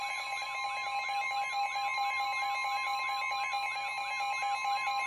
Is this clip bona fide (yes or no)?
yes